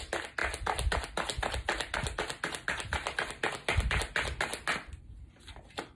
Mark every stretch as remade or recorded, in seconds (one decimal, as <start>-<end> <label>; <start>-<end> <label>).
0.0-5.9 recorded